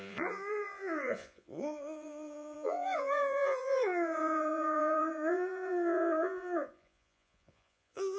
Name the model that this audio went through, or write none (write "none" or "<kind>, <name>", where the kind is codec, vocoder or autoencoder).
vocoder, Vocos